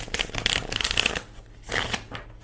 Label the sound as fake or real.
real